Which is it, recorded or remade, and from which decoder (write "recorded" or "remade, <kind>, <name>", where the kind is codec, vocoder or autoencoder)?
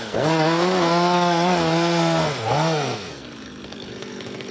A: remade, codec, SNAC